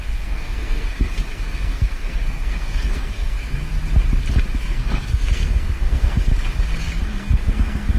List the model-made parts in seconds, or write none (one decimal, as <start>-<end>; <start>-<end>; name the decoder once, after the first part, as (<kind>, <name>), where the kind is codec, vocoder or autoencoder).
0.0-3.7 (codec, SNAC); 4.6-6.3; 6.8-8.0